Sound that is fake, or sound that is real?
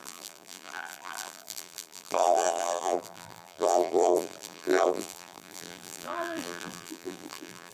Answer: fake